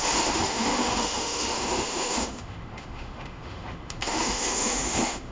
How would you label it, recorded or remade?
remade